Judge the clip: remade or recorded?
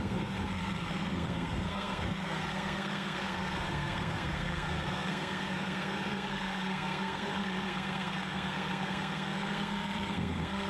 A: remade